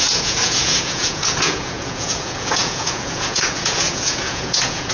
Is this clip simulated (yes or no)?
yes